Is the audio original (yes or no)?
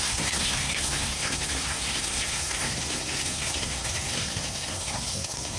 no